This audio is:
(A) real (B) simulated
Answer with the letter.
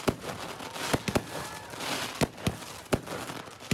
A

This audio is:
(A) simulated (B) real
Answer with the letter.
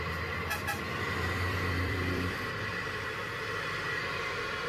A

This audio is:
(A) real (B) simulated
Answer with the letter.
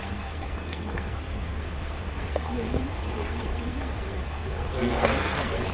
B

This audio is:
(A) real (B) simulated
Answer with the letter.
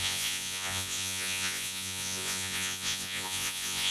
B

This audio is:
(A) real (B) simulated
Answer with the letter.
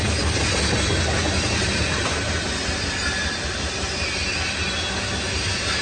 A